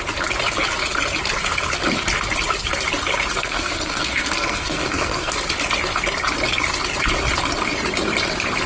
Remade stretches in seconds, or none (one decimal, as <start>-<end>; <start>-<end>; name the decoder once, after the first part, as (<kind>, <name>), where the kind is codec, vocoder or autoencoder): 3.4-5.3 (codec, SNAC)